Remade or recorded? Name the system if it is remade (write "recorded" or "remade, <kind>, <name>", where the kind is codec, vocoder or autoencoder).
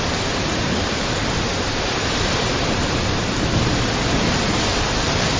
recorded